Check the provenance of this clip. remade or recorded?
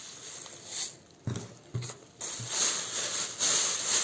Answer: recorded